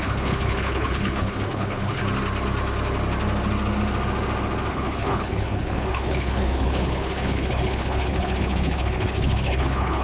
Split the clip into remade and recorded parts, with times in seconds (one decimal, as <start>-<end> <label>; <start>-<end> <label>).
0.0-2.0 remade; 2.0-4.7 recorded; 4.7-10.0 remade